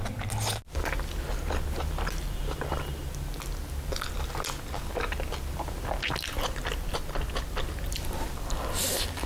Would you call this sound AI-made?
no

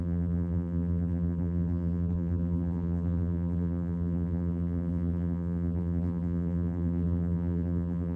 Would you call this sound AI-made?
yes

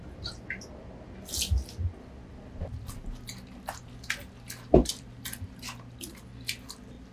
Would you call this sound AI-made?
no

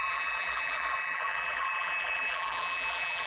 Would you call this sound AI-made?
yes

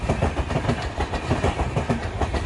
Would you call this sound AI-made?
yes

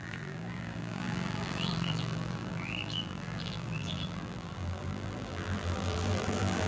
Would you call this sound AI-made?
yes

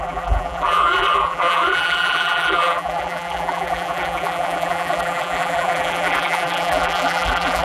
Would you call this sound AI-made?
yes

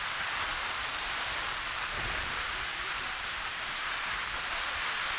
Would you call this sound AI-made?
yes